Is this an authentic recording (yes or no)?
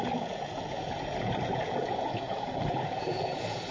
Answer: no